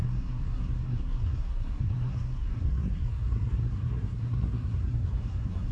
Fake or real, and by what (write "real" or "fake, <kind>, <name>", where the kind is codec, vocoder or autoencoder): fake, codec, SNAC